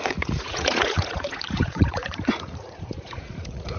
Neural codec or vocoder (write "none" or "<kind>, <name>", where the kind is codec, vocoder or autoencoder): vocoder, Vocos